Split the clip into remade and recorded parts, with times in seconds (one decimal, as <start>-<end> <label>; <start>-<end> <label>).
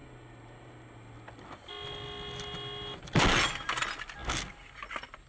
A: 0.0-5.3 recorded